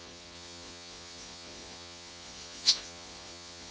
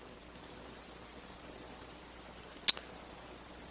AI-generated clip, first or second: first